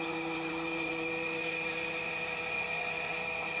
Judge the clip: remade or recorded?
remade